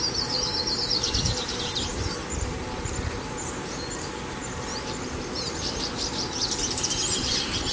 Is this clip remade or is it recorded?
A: remade